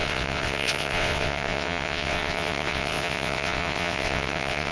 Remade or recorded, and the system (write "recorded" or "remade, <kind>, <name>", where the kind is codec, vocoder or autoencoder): remade, vocoder, WaveNeXt